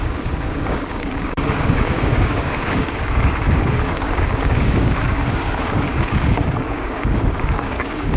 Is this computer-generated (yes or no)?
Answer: yes